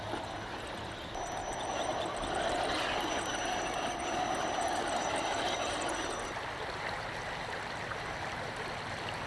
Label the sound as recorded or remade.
recorded